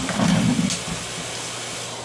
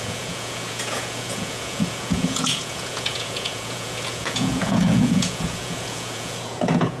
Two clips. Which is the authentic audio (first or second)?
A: first